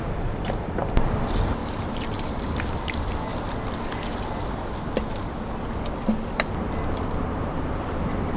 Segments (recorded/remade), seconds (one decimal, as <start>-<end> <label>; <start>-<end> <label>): 0.0-3.3 remade; 3.3-6.9 recorded; 6.9-8.4 remade